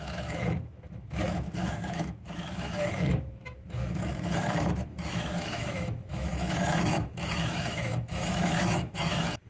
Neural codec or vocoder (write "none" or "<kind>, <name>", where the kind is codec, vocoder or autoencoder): autoencoder, DAC-VAE